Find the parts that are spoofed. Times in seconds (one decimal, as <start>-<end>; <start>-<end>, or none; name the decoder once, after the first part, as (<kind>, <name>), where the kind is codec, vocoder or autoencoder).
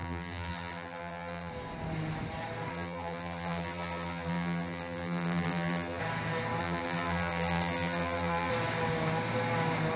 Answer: 0.0-1.5 (vocoder, BigVGAN v2); 2.7-6.0; 6.6-8.5